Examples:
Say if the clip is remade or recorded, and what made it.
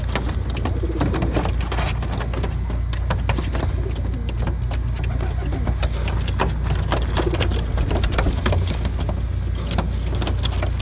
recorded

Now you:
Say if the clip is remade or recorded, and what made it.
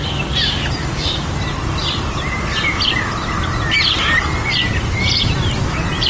recorded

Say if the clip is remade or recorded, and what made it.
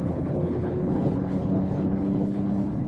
remade, codec, HILCodec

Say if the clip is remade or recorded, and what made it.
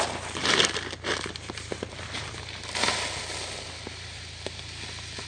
recorded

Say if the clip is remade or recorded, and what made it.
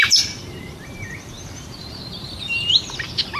remade, vocoder, BigVGAN v2